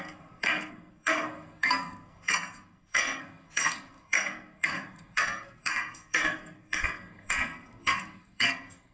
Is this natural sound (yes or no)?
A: no